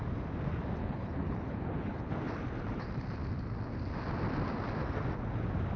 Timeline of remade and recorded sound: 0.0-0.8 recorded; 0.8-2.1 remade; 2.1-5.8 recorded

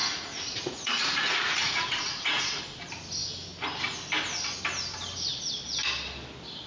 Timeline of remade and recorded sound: 0.0-2.6 remade; 2.6-6.7 recorded

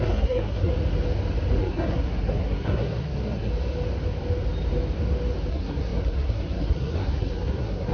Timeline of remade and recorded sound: 0.0-0.7 remade; 0.7-1.6 recorded; 1.6-3.5 remade; 3.5-5.5 recorded; 5.5-7.9 remade

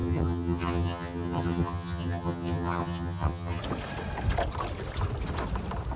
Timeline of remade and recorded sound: 0.0-3.6 remade; 3.6-6.0 recorded

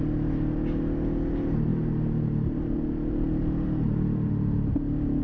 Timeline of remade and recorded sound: 0.0-1.7 recorded; 1.7-4.8 remade; 4.8-5.2 recorded